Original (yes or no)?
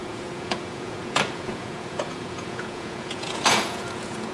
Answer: no